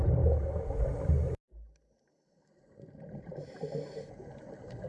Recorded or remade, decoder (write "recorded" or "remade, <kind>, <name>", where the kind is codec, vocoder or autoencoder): recorded